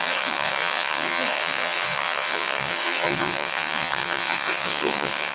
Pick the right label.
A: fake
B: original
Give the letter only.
A